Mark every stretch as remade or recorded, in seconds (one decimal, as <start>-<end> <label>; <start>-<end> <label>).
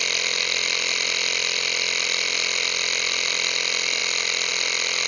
0.0-5.1 recorded